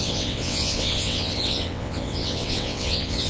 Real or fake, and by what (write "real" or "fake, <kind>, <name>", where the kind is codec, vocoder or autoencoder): fake, vocoder, WaveNeXt